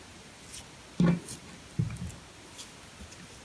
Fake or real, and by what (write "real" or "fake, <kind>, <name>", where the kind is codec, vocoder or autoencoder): real